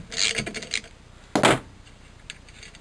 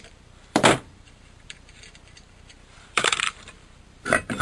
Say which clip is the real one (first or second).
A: first